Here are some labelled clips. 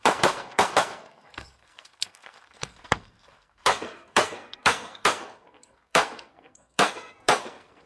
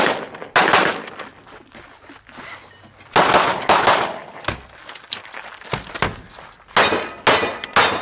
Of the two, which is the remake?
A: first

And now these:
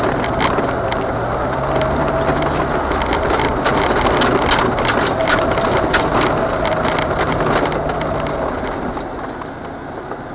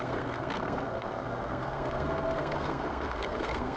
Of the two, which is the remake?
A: second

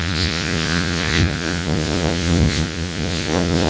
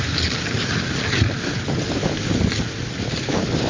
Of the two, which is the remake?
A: first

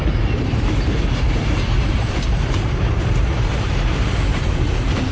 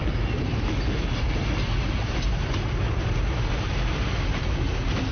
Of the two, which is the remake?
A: first